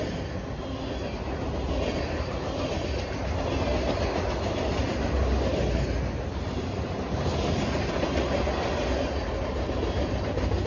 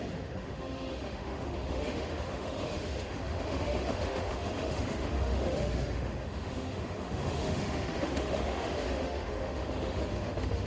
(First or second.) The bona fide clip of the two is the first